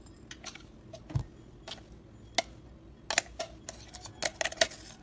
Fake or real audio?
real